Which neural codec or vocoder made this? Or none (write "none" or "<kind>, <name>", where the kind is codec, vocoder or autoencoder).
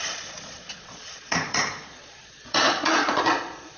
vocoder, Vocos